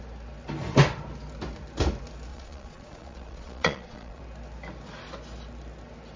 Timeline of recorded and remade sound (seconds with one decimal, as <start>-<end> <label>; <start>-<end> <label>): 0.0-2.3 recorded; 2.3-4.2 remade; 4.2-6.2 recorded